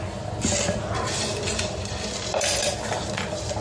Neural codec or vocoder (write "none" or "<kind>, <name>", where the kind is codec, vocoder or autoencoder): none